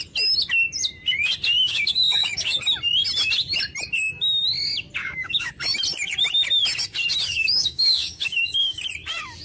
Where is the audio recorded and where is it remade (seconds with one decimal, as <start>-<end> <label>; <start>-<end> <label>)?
0.0-1.6 recorded; 1.6-2.6 remade; 2.6-5.0 recorded; 5.0-5.5 remade; 5.5-7.2 recorded; 7.2-8.8 remade; 8.8-9.4 recorded